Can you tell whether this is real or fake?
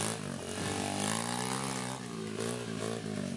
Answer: real